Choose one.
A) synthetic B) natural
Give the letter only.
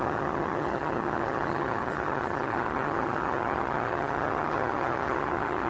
A